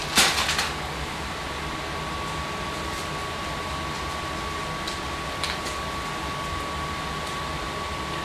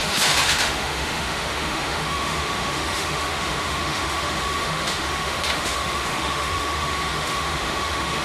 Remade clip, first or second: second